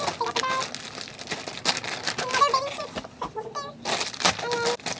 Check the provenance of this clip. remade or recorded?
recorded